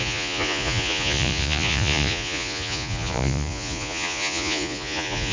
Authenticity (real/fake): fake